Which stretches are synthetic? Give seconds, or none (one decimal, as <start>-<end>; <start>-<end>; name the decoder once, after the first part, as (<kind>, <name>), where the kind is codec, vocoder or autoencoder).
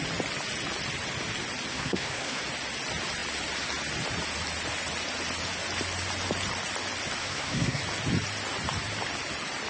1.7-2.4 (codec, SNAC); 7.2-7.8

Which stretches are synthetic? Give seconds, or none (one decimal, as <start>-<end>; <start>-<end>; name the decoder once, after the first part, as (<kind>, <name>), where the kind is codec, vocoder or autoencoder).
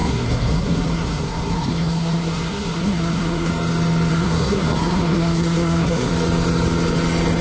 0.0-3.5 (codec, SNAC); 4.1-6.1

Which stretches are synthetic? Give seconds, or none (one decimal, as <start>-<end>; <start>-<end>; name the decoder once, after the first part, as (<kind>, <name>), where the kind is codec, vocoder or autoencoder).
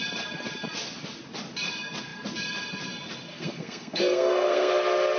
3.3-4.7 (codec, SNAC)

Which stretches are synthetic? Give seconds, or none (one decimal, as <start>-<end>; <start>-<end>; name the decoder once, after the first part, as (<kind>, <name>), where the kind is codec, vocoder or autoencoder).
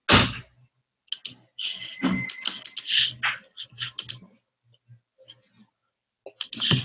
none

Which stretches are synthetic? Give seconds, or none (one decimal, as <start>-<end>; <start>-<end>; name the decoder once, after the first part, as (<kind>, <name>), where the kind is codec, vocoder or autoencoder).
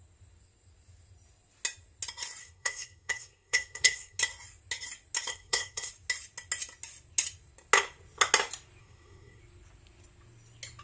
2.4-4.2 (codec, SNAC); 5.3-5.9; 8.8-9.4